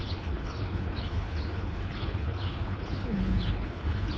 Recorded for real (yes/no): no